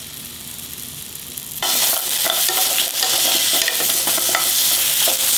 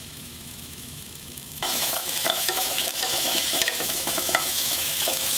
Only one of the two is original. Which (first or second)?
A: first